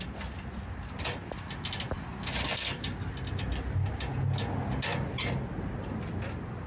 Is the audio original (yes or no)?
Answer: yes